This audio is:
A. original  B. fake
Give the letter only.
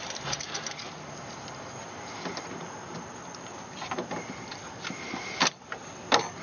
B